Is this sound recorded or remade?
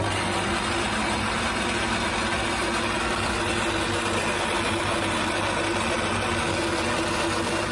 recorded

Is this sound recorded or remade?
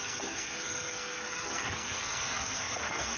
remade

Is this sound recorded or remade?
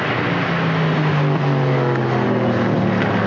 recorded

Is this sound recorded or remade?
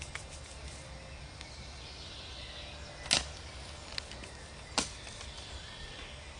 recorded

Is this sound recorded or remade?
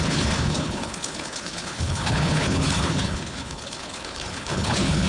remade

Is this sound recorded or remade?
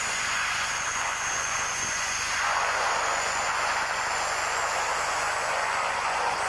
remade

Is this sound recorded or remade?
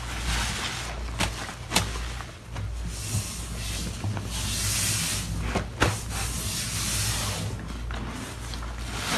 recorded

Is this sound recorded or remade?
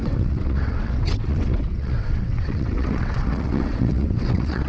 remade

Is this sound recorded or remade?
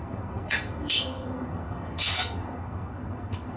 remade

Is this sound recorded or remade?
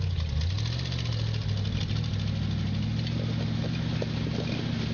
recorded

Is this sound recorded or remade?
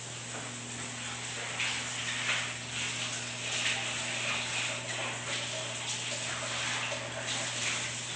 recorded